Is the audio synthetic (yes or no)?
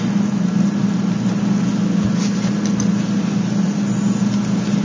no